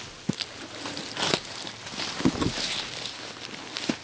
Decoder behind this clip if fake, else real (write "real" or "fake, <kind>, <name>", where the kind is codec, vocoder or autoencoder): real